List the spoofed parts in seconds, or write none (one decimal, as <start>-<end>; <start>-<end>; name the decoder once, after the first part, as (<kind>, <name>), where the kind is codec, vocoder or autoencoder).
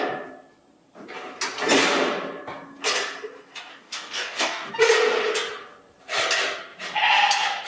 3.7-4.7 (codec, DAC)